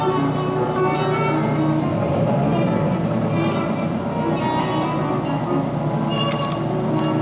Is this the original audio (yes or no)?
yes